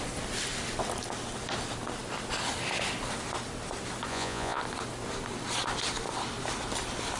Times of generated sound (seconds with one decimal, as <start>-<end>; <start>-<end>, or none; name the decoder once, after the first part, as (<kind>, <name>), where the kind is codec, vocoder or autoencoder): 4.1-4.6 (vocoder, Vocos)